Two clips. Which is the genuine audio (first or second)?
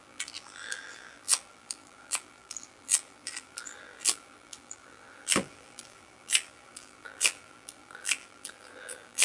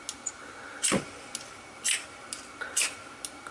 second